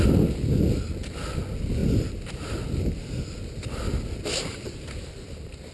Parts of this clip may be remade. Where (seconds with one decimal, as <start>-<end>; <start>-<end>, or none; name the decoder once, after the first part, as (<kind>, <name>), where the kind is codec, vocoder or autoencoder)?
none